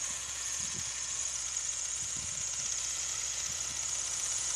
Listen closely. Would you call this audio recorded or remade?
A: remade